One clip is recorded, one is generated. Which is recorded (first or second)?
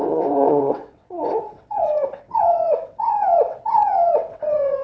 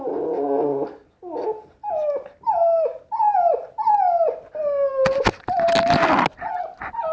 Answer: second